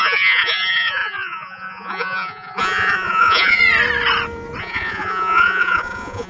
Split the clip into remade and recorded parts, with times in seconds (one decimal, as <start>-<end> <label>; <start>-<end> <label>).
0.0-3.6 remade; 3.6-4.6 recorded; 4.6-6.3 remade